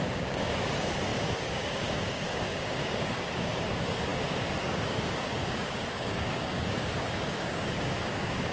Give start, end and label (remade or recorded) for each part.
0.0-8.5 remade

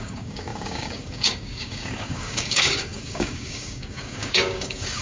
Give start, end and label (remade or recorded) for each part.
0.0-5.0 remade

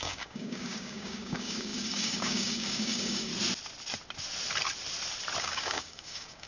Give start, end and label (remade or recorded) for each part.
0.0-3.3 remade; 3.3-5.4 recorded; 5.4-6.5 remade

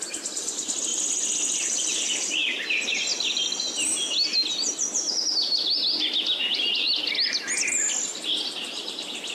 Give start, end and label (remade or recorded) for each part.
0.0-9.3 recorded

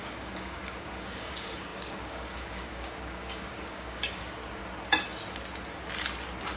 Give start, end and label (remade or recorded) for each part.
0.0-4.4 remade; 4.4-6.6 recorded

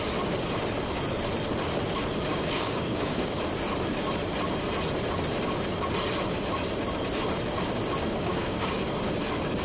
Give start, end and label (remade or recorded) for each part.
0.0-2.3 recorded; 2.3-3.4 remade; 3.4-8.0 recorded; 8.0-8.7 remade; 8.7-9.6 recorded

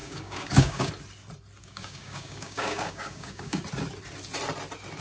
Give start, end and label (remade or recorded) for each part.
0.0-0.9 remade; 0.9-1.6 recorded; 1.6-3.6 remade; 3.6-5.0 recorded

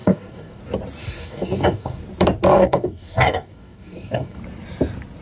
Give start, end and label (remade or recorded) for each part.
0.0-0.6 remade; 0.6-1.0 recorded; 1.0-2.0 remade; 2.0-2.5 recorded; 2.5-4.4 remade; 4.4-5.2 recorded